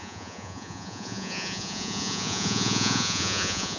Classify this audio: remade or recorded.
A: remade